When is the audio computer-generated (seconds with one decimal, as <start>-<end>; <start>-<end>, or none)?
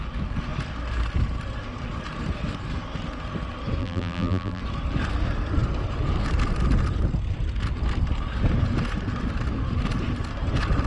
3.8-4.6